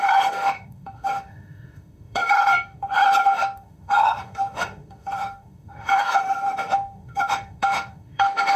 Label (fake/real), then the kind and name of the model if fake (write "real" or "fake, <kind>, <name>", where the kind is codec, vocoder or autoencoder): fake, autoencoder, DAC-VAE